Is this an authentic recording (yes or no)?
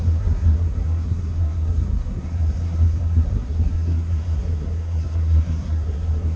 no